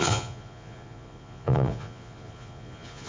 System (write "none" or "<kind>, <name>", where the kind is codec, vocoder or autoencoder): vocoder, Vocos